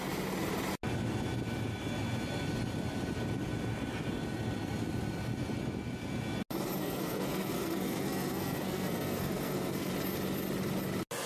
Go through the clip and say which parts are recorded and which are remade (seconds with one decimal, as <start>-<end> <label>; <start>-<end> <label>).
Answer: 0.0-6.8 recorded; 6.8-9.9 remade; 9.9-11.3 recorded